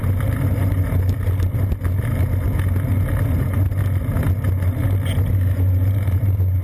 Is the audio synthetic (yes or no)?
no